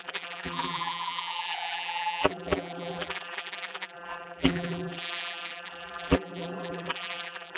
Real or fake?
fake